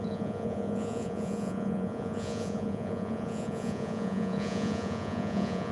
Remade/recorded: remade